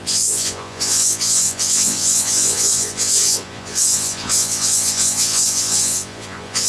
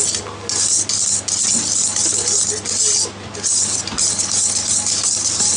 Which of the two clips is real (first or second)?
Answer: second